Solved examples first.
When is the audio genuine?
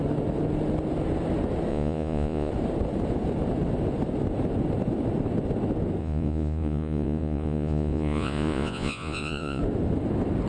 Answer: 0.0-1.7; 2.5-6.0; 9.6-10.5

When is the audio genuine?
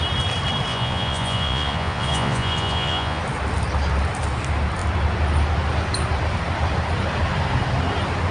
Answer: 0.0-0.7; 3.2-8.3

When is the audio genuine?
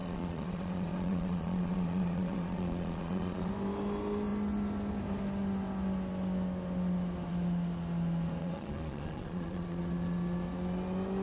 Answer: 3.5-8.4; 9.8-11.2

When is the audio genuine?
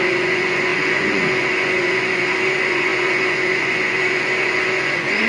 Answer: none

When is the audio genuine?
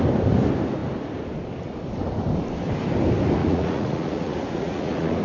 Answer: 0.0-3.4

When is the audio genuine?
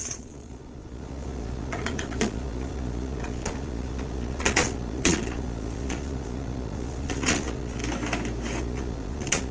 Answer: 7.8-8.6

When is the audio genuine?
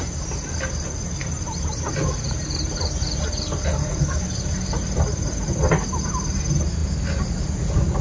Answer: 0.0-8.0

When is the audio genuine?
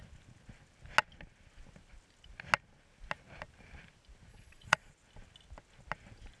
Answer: 0.0-4.3; 4.9-6.4